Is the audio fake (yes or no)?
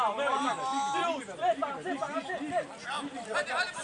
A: no